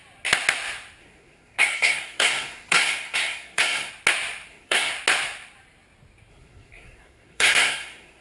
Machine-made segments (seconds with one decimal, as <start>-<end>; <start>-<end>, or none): 1.0-3.9; 4.5-4.9; 6.3-8.2